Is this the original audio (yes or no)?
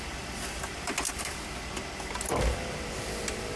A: yes